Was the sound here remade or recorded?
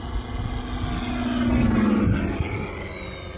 recorded